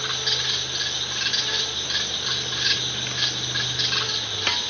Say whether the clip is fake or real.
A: real